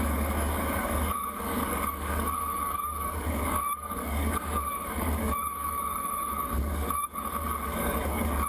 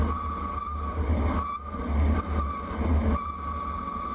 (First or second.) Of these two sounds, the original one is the second